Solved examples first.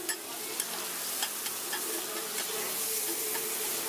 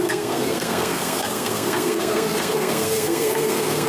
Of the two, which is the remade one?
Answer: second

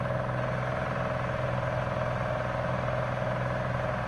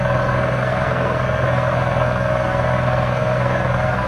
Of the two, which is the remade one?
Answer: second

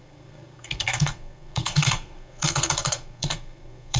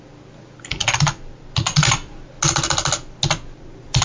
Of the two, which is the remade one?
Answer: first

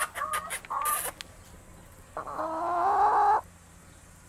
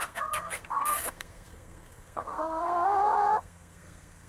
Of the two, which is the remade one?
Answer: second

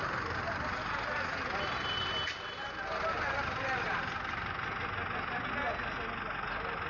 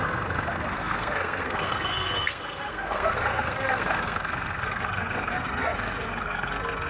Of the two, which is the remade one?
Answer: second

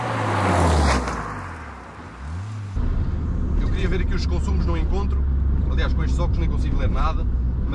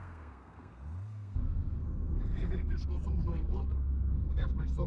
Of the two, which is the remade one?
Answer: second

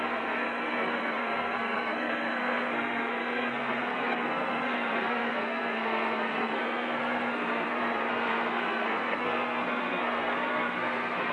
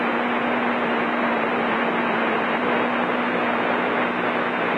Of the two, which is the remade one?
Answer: first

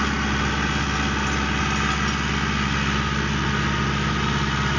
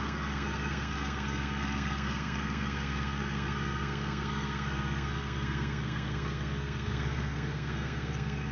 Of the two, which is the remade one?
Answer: second